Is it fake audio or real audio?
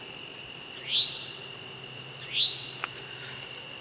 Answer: real